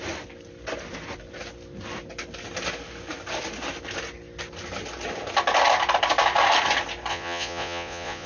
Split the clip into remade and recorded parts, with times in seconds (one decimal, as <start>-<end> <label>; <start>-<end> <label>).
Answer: 0.0-7.1 recorded; 7.1-8.3 remade